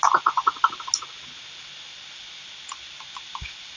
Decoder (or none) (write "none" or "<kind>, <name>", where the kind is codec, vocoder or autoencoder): none